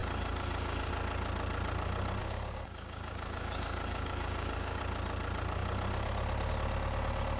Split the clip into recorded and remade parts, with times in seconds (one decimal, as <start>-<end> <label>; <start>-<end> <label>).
0.0-0.9 remade; 0.9-2.2 recorded; 2.2-4.8 remade; 4.8-7.4 recorded